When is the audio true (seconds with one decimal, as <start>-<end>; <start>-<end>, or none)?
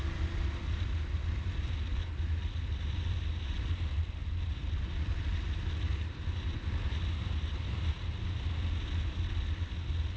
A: 0.0-10.2